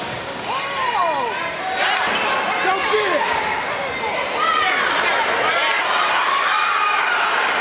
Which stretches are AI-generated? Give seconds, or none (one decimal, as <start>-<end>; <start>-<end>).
0.0-0.6